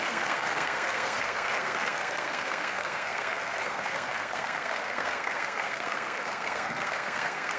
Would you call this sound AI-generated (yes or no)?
yes